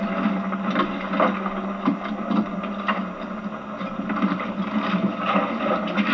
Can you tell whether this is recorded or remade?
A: recorded